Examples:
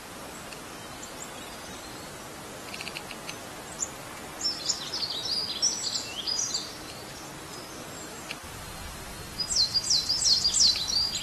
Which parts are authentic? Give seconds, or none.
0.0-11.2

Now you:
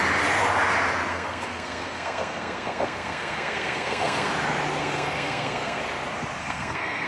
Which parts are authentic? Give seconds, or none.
0.0-1.1; 4.3-4.8; 5.8-6.4

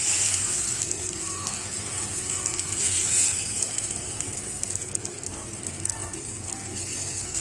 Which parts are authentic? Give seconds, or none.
none

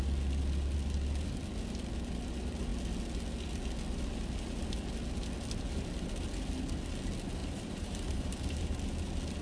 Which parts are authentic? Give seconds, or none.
0.0-7.4; 8.7-9.4